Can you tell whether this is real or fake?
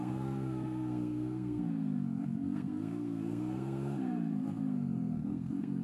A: fake